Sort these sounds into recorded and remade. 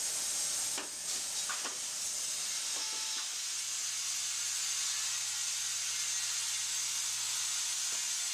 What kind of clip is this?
recorded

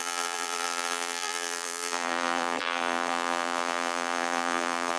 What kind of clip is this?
remade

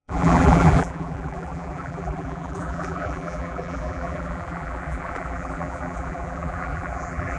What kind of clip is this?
remade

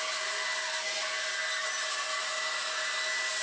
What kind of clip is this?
recorded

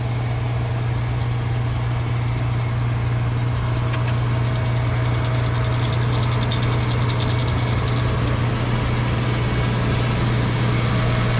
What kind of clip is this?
recorded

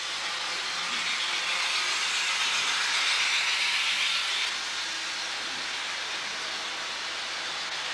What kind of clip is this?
recorded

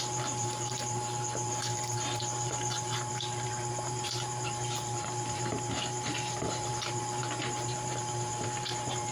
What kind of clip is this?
remade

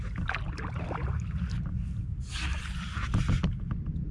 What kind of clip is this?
recorded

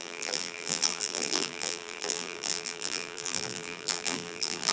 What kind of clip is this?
remade